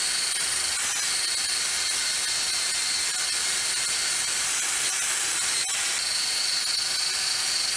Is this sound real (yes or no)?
yes